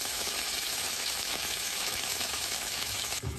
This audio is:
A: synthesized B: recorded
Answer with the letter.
A